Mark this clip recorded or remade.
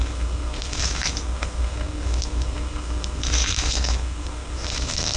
remade